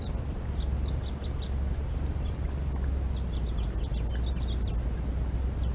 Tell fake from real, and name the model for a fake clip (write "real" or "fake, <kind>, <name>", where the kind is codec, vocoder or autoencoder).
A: real